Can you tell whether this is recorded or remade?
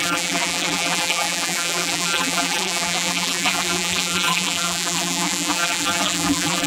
remade